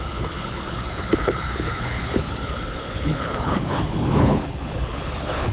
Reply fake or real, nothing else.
fake